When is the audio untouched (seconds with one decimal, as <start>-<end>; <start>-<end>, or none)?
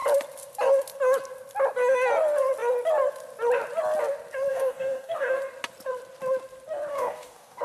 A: 0.0-4.5; 5.4-6.9